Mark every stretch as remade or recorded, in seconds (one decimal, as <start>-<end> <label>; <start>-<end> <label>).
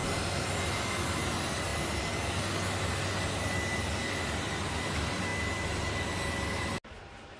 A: 0.0-7.4 recorded